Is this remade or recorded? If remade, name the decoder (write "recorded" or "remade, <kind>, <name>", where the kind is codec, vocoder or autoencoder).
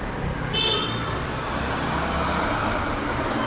recorded